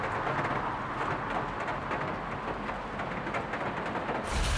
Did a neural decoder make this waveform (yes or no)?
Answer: no